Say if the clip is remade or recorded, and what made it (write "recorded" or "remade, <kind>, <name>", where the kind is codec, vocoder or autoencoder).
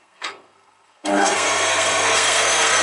remade, codec, SNAC